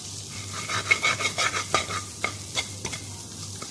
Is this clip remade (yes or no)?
no